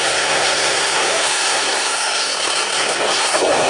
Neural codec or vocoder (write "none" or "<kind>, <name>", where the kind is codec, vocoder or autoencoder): codec, SNAC